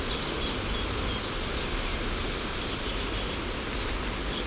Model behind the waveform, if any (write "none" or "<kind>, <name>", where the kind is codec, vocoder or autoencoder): none